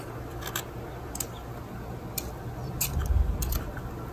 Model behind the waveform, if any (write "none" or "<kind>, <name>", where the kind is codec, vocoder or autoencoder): none